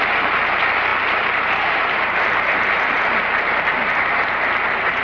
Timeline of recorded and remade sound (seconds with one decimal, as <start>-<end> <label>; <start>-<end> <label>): 0.0-5.0 recorded